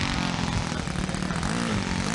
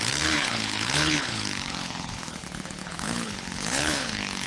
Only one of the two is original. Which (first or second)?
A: first